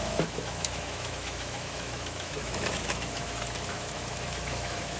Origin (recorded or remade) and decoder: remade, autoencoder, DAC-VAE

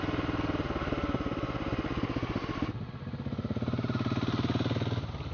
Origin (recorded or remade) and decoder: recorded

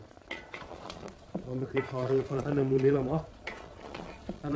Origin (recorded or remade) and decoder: remade, vocoder, Vocos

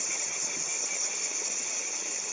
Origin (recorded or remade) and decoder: remade, vocoder, HiFi-GAN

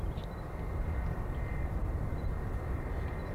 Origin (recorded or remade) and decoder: recorded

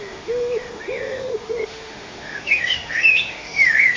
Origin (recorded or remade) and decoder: remade, autoencoder, DAC-VAE